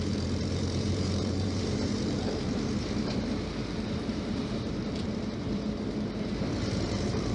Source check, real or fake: fake